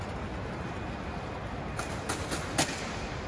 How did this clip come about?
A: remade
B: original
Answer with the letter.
B